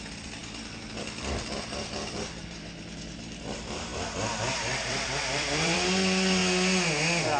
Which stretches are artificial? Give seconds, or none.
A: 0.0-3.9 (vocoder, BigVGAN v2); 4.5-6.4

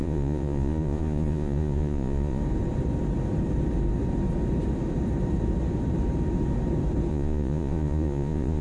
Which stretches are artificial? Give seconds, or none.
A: 0.0-2.4 (vocoder, Vocos); 7.1-8.6

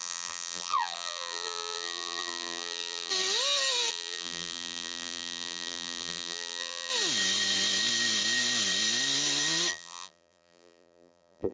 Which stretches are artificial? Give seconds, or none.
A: 0.0-3.1 (vocoder, BigVGAN v2); 3.9-6.9; 9.7-11.5

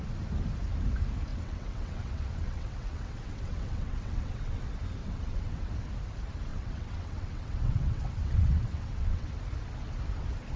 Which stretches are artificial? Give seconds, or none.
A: 1.3-4.6 (vocoder, WaveNeXt); 5.0-5.7; 6.5-9.3